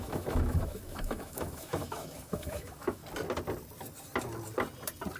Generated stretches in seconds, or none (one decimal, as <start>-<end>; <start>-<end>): 0.0-3.0